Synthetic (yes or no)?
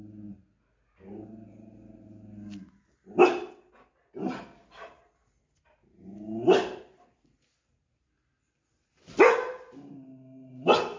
no